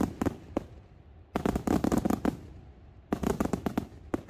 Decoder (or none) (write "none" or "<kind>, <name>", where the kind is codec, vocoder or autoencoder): none